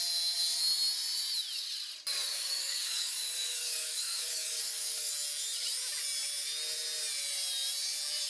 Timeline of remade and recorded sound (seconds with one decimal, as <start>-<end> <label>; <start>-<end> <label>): 0.0-2.3 recorded; 2.3-5.1 remade; 5.1-8.3 recorded